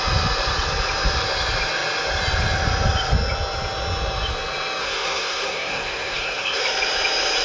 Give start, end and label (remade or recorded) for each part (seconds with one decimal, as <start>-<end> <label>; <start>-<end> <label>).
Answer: 0.0-4.8 recorded; 4.8-6.6 remade; 6.6-7.4 recorded